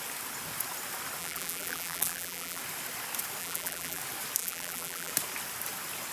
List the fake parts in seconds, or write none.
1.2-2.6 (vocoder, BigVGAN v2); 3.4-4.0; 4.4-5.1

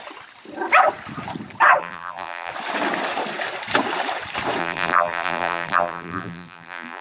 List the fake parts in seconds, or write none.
1.8-2.5 (vocoder, BigVGAN v2); 4.6-7.0

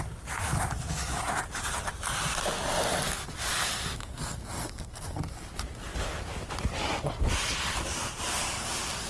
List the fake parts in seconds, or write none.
4.0-5.2 (codec, SNAC)

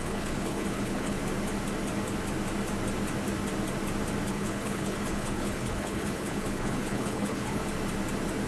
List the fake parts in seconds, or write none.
0.0-1.2 (codec, HILCodec); 4.3-7.6

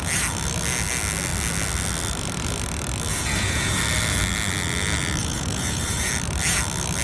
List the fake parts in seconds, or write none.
3.1-3.8 (vocoder, Vocos); 5.2-6.1

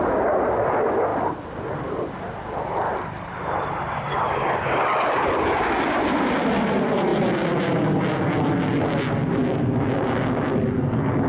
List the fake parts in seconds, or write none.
9.2-10.6 (codec, DAC)